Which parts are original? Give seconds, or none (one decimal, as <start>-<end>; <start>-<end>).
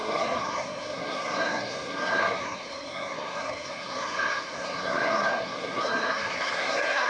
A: none